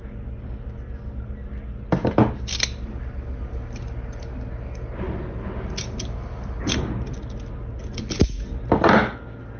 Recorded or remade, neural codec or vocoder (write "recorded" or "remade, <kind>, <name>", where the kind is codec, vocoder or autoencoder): recorded